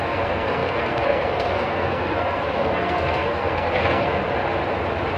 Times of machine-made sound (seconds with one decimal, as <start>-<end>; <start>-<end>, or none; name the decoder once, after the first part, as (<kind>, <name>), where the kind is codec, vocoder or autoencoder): 0.0-4.2 (codec, SNAC)